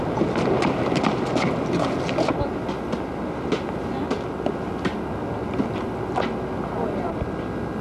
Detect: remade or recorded recorded